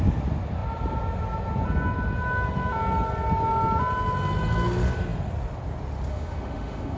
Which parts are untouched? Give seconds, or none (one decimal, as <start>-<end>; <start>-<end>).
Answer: 0.0-6.1